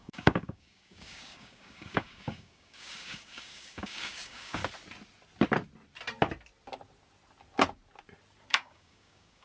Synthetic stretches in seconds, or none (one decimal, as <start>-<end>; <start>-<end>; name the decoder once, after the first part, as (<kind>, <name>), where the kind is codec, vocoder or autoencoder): 0.0-4.6 (codec, DAC); 8.5-9.4